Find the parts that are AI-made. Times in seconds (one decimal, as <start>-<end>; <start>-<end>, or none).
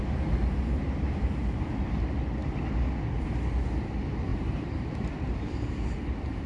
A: 0.4-1.8; 4.3-5.7